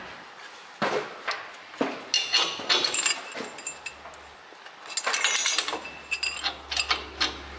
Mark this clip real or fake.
real